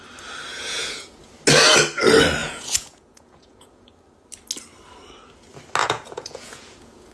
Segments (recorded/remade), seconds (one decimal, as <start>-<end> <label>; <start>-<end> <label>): 0.0-0.5 recorded; 0.5-1.2 remade; 1.2-2.4 recorded; 2.4-3.9 remade; 3.9-5.8 recorded; 5.8-7.1 remade